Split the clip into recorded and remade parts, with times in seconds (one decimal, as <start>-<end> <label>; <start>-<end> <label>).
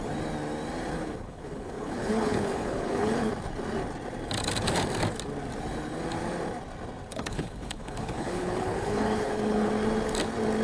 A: 0.0-0.9 recorded; 0.9-3.3 remade; 3.3-7.1 recorded; 7.1-9.7 remade; 9.7-10.6 recorded